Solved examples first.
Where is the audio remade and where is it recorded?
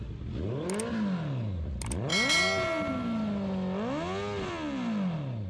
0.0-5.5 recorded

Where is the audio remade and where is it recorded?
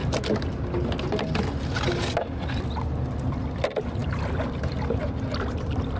0.0-2.6 recorded; 2.6-6.0 remade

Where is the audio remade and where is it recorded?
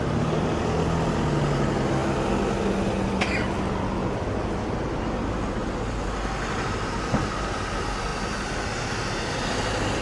0.0-10.0 recorded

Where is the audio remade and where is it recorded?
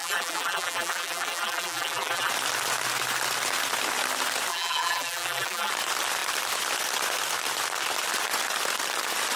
0.0-2.3 remade; 2.3-4.5 recorded; 4.5-5.7 remade; 5.7-9.4 recorded